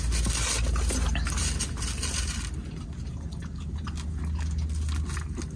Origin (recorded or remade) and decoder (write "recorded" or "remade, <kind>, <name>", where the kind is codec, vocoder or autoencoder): recorded